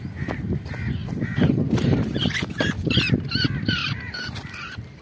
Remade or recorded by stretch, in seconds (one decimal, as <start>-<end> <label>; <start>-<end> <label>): 0.0-1.0 recorded; 1.0-2.5 remade; 2.5-3.8 recorded; 3.8-5.0 remade